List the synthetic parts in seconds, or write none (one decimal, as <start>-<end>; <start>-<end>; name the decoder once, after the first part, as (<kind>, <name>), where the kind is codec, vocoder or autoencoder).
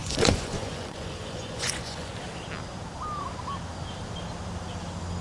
0.0-2.1 (vocoder, Vocos)